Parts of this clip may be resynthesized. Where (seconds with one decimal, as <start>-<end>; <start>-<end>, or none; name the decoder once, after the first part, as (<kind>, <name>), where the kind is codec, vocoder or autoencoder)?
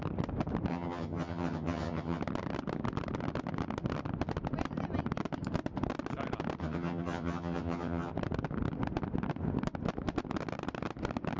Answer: 0.7-2.2 (vocoder, HiFi-GAN); 6.6-8.1